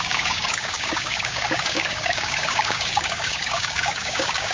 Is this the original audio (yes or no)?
no